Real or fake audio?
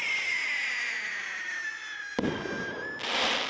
real